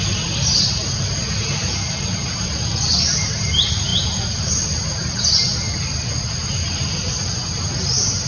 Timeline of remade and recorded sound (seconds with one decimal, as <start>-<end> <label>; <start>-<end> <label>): 0.0-8.3 recorded